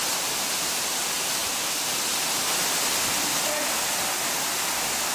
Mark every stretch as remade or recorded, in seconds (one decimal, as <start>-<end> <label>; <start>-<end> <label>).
0.0-5.1 recorded